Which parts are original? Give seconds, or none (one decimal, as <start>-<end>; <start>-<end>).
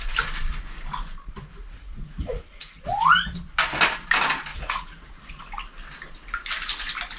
0.0-1.5; 3.1-4.5; 5.4-7.2